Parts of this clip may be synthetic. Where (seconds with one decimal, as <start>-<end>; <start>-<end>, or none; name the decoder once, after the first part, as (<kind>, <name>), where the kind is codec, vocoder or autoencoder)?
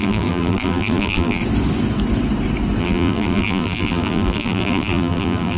0.0-1.4 (vocoder, BigVGAN v2); 2.8-5.6